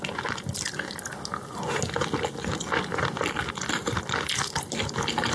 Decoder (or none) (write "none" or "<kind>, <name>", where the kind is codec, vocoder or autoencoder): none